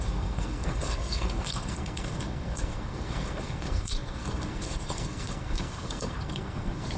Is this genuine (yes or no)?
no